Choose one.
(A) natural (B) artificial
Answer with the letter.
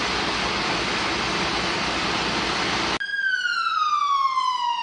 A